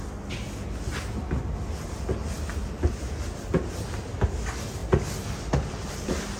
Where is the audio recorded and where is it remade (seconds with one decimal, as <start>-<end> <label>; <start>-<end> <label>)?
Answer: 0.0-6.4 recorded